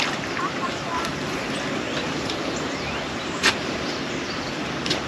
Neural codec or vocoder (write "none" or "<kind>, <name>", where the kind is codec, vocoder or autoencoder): vocoder, BigVGAN v2